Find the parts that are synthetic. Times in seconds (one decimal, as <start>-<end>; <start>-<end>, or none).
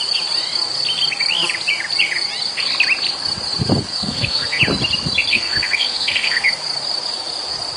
3.9-4.6; 5.3-6.5